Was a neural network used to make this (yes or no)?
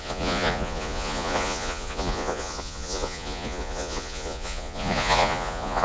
yes